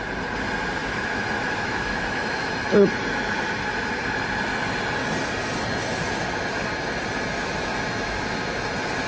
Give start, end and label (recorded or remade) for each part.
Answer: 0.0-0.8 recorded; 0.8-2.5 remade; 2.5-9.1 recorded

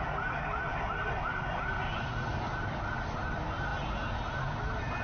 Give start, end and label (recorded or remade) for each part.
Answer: 0.0-5.0 recorded